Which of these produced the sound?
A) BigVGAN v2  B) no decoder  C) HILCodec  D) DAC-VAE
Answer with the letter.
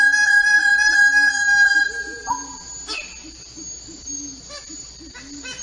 B